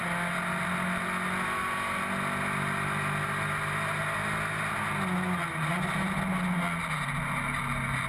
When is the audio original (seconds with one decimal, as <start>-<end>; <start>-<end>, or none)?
0.0-8.1